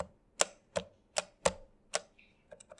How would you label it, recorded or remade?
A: recorded